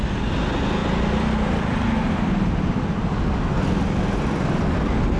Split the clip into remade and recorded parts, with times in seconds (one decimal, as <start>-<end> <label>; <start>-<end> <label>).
0.0-5.2 recorded